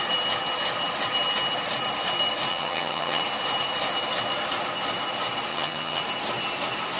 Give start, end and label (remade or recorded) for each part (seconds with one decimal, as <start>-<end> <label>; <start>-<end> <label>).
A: 0.0-2.5 recorded; 2.5-3.2 remade; 3.2-5.5 recorded; 5.5-6.0 remade; 6.0-7.0 recorded